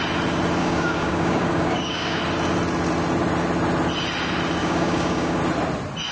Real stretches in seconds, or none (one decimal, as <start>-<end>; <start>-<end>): 0.0-0.6; 2.2-4.6; 5.4-6.1